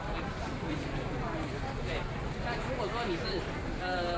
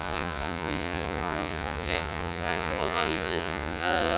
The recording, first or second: first